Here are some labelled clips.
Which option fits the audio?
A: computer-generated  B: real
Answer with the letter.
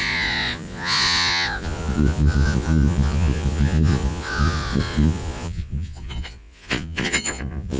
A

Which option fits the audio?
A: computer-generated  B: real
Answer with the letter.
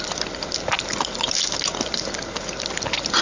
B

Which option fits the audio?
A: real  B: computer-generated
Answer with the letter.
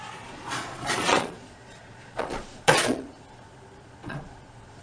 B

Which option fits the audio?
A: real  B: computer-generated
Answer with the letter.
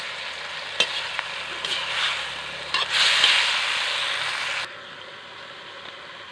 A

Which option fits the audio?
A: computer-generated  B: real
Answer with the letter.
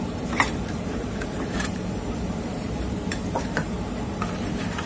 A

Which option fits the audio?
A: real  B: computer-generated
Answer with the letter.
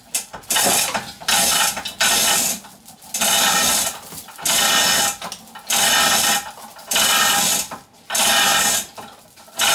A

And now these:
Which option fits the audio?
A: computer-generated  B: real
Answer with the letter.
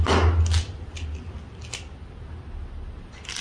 B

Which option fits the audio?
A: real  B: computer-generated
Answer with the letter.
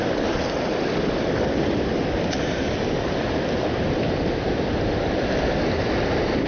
A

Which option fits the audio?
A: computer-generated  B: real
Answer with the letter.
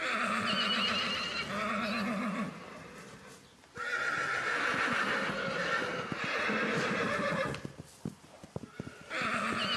B